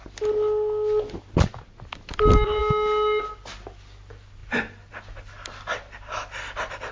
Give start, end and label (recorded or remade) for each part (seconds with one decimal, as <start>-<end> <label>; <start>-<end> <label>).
0.0-6.9 recorded